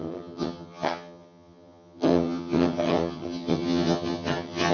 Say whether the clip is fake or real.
fake